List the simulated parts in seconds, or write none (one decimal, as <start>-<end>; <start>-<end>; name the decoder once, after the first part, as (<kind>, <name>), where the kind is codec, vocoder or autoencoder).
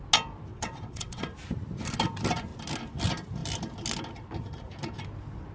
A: 0.5-1.2 (vocoder, WaveNeXt)